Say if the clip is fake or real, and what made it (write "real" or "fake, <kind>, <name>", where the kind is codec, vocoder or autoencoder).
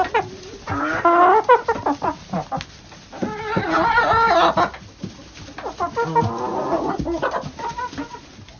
real